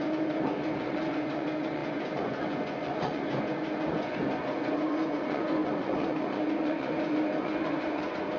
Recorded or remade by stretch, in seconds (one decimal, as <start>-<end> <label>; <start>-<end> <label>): 0.0-8.4 remade

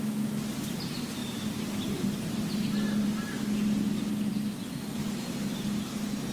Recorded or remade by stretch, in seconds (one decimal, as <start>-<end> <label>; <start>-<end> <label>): 0.0-1.2 recorded; 1.2-3.3 remade; 3.3-6.3 recorded

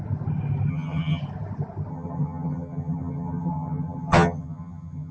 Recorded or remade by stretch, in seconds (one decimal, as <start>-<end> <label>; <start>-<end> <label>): 0.0-0.7 recorded; 0.7-1.2 remade; 1.2-1.9 recorded; 1.9-5.1 remade

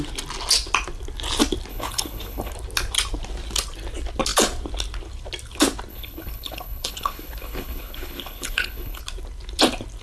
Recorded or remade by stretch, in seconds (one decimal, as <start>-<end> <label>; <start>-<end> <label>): 0.0-1.7 recorded; 1.7-2.5 remade; 2.5-5.9 recorded; 5.9-9.0 remade; 9.0-10.0 recorded

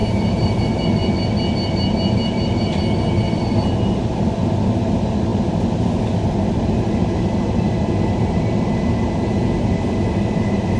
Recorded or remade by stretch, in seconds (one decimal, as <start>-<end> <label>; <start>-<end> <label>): 0.0-0.8 remade; 0.8-10.8 recorded

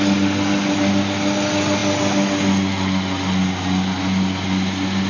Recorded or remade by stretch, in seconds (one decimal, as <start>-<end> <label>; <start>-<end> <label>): 0.0-5.1 recorded

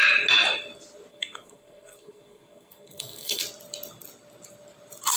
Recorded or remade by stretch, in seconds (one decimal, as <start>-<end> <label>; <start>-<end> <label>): 0.0-1.1 recorded; 1.1-3.4 remade; 3.4-5.2 recorded

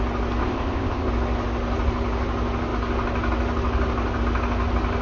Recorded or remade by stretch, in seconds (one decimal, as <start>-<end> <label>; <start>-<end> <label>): 0.0-0.4 recorded; 0.4-1.1 remade; 1.1-5.0 recorded